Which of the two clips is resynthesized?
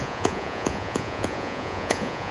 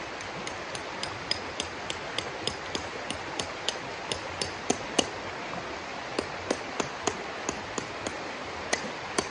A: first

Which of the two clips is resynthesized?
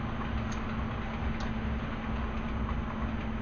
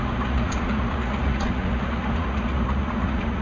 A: second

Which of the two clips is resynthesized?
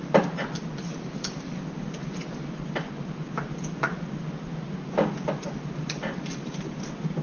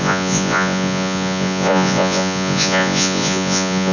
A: second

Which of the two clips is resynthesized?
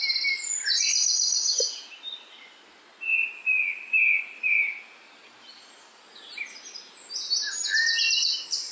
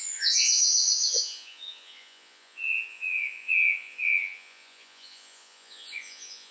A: second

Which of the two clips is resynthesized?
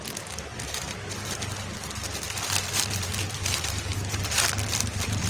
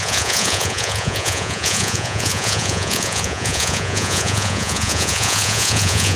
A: second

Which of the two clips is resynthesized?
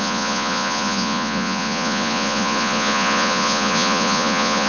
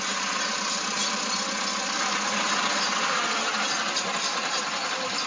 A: first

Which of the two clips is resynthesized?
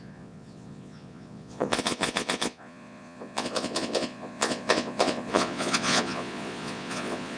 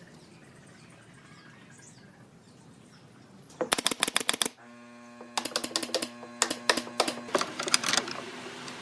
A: first